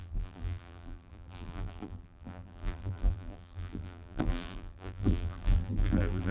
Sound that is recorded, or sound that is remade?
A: remade